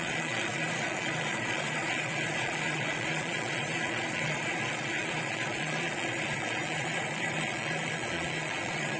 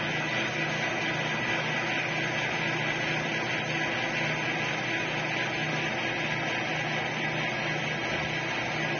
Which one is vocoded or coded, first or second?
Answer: first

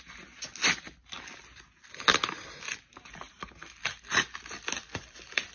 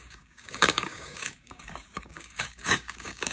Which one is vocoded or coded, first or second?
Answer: second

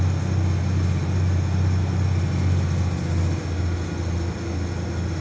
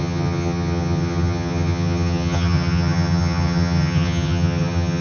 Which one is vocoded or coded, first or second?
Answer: second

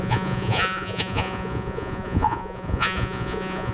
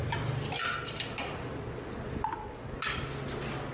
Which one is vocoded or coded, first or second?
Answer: first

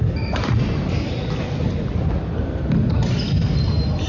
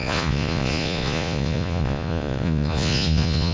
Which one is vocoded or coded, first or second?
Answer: second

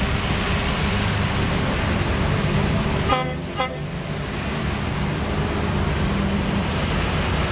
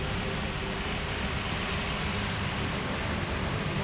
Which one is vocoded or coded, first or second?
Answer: second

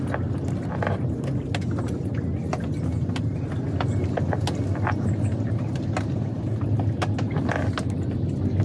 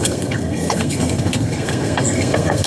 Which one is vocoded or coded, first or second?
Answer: second